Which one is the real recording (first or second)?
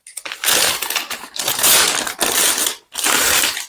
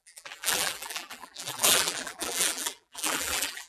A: first